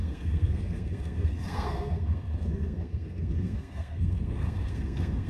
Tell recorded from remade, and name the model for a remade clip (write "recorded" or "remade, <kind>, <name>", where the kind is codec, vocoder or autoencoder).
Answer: remade, codec, SNAC